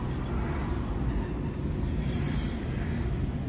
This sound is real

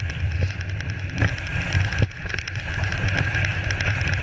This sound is real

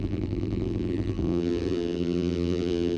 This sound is fake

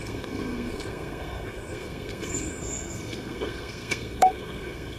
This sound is fake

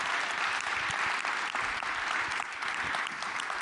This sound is real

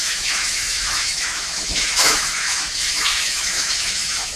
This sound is fake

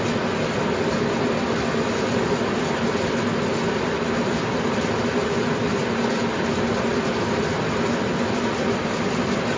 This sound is real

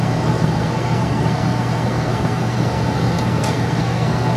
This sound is fake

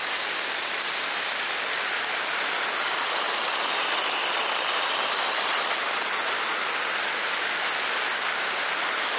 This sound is real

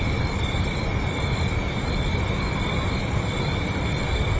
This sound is real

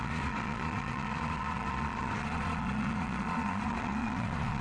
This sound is fake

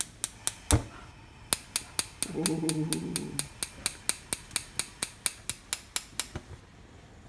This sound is real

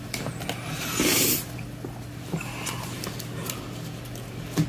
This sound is real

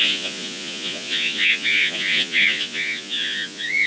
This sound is fake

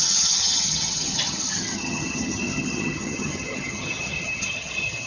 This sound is fake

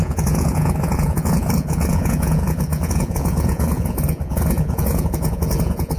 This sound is fake